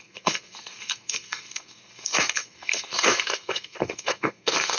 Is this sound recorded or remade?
remade